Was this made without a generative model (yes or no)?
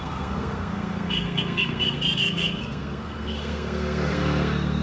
no